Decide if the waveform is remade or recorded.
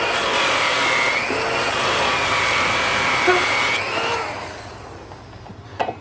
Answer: recorded